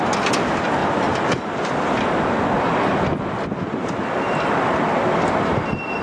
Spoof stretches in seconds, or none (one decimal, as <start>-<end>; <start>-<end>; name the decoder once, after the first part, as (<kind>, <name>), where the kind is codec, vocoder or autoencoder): none